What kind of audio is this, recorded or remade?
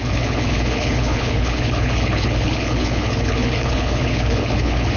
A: remade